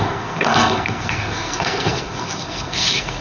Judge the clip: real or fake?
fake